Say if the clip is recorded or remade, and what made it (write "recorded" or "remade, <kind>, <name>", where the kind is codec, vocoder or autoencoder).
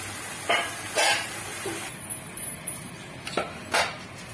recorded